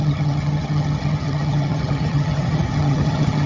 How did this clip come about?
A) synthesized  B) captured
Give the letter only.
A